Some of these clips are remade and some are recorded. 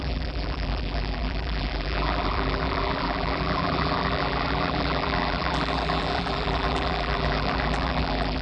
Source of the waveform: remade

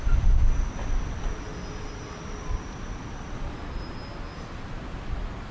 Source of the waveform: recorded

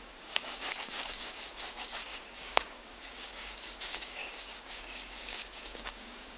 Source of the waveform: remade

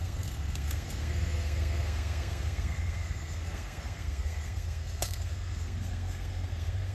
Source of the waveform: remade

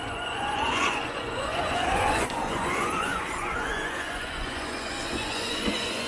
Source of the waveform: remade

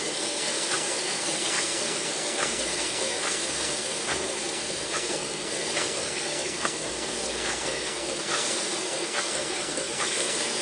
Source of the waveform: remade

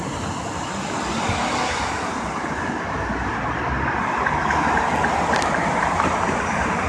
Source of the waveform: recorded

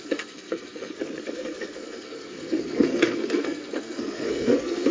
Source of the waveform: remade